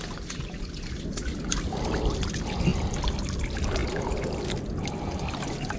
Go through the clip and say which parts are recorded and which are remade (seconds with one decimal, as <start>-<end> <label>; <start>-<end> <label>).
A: 0.0-5.8 recorded